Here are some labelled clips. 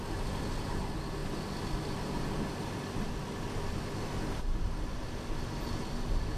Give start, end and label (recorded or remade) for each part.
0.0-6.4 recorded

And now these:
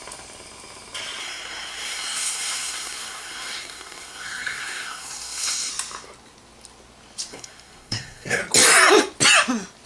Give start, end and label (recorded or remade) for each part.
0.0-1.2 recorded; 1.2-5.7 remade; 5.7-7.3 recorded; 7.3-8.4 remade; 8.4-9.9 recorded

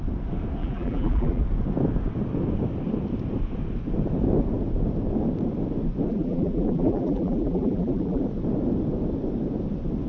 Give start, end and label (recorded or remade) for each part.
0.0-0.6 recorded; 0.6-1.4 remade; 1.4-6.1 recorded; 6.1-8.2 remade; 8.2-10.1 recorded

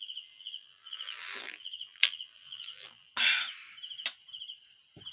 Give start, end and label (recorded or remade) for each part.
0.0-3.1 remade; 3.1-5.1 recorded

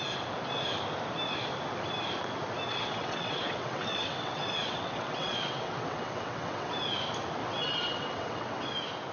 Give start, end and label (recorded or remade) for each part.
0.0-2.7 recorded; 2.7-6.7 remade; 6.7-7.4 recorded; 7.4-8.7 remade; 8.7-9.1 recorded

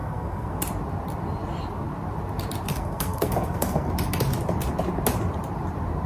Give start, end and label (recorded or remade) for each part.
0.0-0.6 remade; 0.6-2.7 recorded; 2.7-3.9 remade; 3.9-6.1 recorded

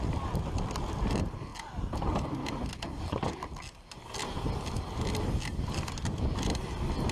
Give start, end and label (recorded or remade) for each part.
0.0-7.1 recorded

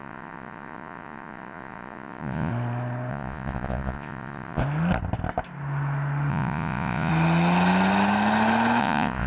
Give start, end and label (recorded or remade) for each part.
0.0-2.5 remade; 2.5-3.1 recorded; 3.1-4.6 remade; 4.6-6.3 recorded; 6.3-7.1 remade; 7.1-8.8 recorded; 8.8-9.3 remade